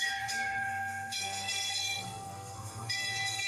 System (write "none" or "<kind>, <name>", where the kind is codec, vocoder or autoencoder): codec, SNAC